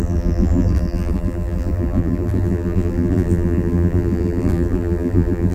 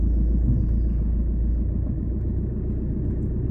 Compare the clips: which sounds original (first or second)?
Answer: second